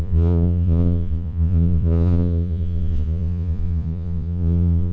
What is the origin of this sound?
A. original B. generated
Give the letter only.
B